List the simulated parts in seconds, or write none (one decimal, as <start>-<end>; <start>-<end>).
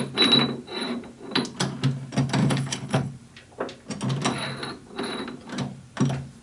2.4-3.1